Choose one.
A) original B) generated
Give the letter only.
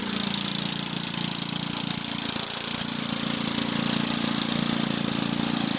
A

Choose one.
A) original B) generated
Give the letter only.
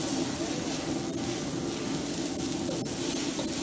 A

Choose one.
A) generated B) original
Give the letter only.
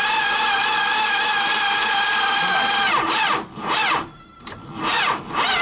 A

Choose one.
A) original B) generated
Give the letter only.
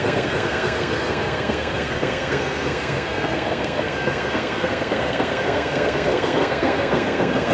B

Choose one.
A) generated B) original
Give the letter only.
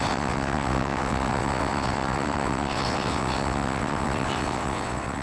A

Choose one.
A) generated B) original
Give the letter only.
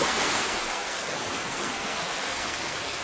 A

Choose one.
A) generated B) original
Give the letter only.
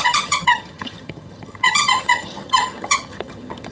A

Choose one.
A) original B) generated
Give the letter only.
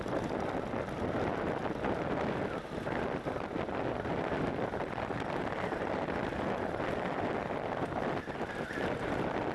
A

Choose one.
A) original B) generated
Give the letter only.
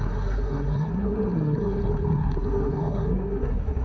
B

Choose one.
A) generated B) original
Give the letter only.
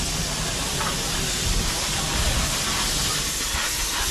B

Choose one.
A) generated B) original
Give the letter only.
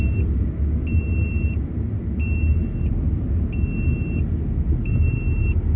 B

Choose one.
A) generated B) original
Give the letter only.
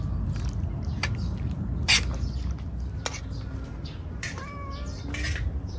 B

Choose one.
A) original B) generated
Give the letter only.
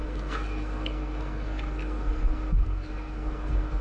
B